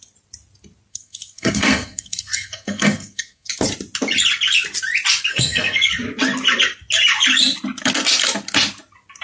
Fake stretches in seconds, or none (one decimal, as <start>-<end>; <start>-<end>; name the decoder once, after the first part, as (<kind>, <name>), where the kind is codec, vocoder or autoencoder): 0.9-3.5 (codec, SNAC); 5.3-5.9